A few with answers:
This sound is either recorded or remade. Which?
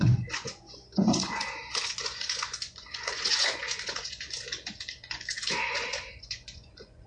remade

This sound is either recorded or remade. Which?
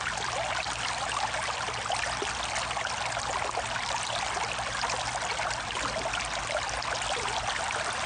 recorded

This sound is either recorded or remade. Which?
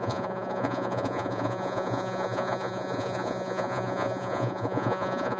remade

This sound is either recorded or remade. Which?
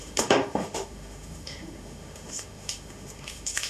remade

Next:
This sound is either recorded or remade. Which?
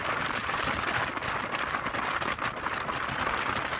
recorded